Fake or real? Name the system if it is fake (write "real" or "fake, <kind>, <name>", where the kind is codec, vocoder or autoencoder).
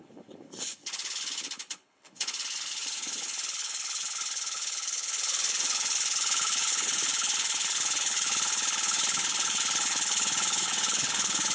fake, codec, HILCodec